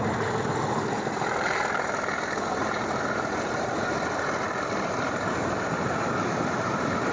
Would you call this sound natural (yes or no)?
no